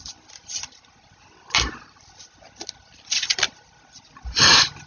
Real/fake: real